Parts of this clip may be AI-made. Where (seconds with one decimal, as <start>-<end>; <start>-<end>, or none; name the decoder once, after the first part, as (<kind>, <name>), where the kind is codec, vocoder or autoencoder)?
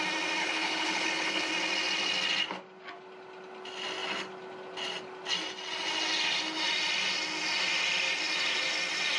0.4-1.5 (codec, HILCodec)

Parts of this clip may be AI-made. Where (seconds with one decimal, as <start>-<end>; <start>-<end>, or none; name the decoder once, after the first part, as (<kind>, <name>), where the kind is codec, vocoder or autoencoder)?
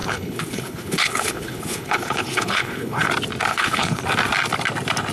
0.0-3.1 (codec, HILCodec); 3.5-4.0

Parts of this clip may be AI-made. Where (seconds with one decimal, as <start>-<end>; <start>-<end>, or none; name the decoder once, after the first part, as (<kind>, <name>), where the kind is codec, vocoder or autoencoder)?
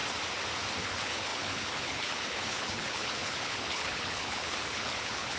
0.8-5.4 (codec, HILCodec)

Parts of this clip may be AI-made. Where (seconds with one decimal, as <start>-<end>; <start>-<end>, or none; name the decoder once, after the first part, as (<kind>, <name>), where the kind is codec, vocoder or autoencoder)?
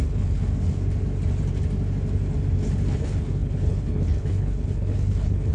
0.0-0.5 (codec, HILCodec); 2.9-5.5